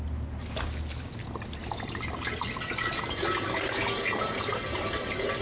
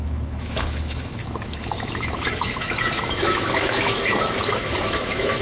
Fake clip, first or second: second